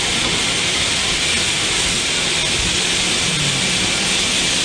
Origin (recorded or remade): recorded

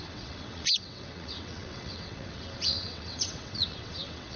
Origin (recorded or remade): remade